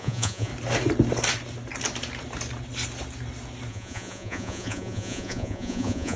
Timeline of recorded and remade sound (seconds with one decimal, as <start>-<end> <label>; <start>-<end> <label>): 0.0-0.5 remade; 0.5-3.7 recorded; 3.7-6.2 remade